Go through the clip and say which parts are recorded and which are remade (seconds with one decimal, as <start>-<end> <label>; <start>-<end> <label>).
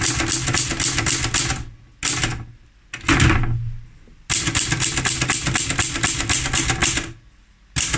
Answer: 0.0-8.0 recorded